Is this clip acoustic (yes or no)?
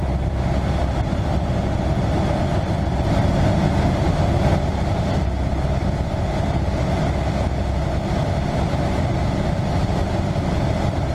yes